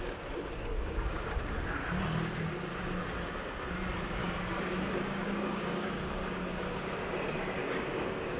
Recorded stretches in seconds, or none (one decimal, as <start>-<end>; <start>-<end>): 0.0-0.7; 1.4-4.2; 6.9-7.6